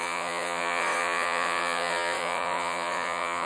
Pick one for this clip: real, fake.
fake